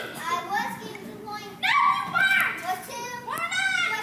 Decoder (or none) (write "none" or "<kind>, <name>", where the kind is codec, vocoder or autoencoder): none